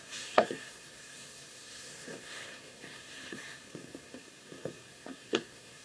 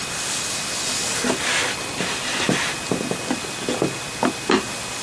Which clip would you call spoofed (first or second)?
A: first